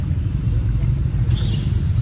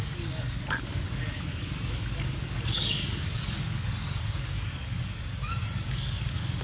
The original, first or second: first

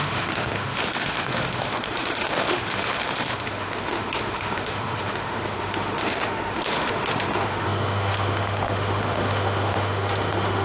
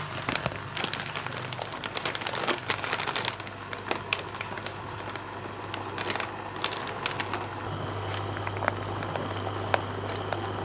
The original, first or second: second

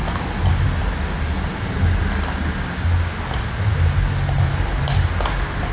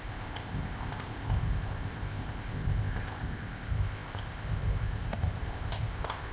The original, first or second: first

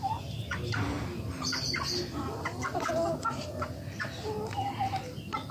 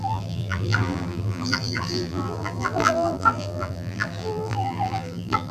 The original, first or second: first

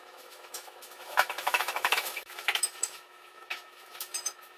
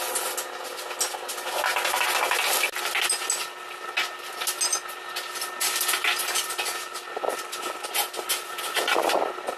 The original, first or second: second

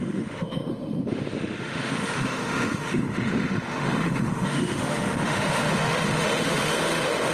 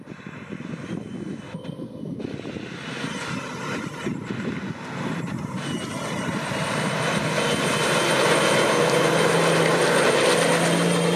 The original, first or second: second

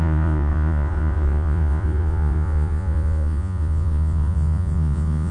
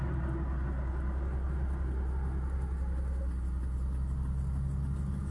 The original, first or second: second